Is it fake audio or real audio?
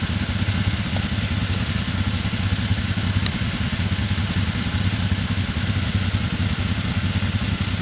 real